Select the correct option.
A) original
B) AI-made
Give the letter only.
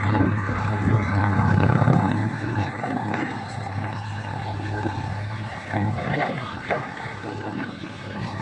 B